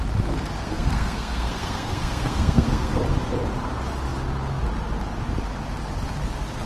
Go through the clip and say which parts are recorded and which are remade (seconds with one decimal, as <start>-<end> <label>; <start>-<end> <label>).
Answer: 0.0-0.6 recorded; 0.6-3.0 remade; 3.0-6.7 recorded